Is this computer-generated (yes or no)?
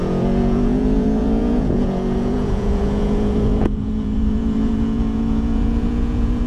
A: yes